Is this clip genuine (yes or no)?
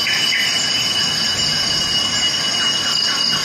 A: yes